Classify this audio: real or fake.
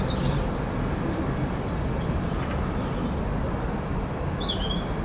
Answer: real